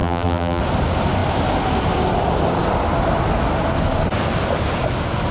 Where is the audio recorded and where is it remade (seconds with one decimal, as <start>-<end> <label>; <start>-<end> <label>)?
0.0-0.6 remade; 0.6-5.3 recorded

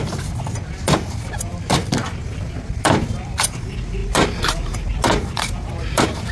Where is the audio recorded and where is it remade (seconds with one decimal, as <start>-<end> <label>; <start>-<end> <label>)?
0.0-4.0 recorded; 4.0-6.3 remade

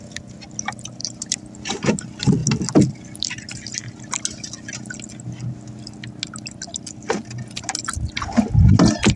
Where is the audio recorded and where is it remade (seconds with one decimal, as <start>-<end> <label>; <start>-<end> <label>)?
0.0-1.0 recorded; 1.0-1.8 remade; 1.8-9.2 recorded

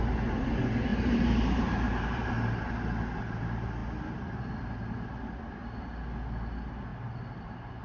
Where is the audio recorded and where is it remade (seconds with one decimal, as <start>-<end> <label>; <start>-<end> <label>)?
0.0-0.9 recorded; 0.9-2.3 remade; 2.3-6.9 recorded; 6.9-7.8 remade

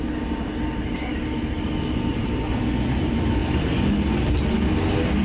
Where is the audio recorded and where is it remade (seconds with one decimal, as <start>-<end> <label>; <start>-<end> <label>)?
0.0-5.2 recorded